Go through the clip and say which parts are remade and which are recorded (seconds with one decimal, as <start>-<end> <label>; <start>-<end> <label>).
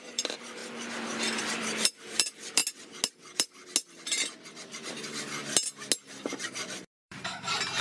0.0-0.6 remade; 0.6-1.4 recorded; 1.4-2.6 remade; 2.6-4.7 recorded; 4.7-5.4 remade; 5.4-6.4 recorded; 6.4-7.8 remade